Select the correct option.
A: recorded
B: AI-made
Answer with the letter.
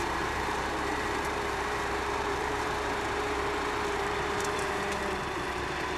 B